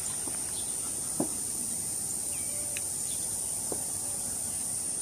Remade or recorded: recorded